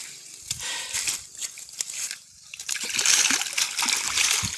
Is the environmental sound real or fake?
real